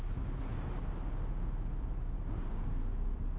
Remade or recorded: recorded